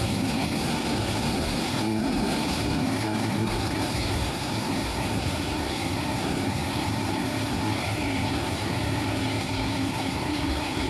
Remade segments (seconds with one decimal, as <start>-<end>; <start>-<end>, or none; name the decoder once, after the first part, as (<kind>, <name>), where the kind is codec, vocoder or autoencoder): 0.0-10.9 (codec, SNAC)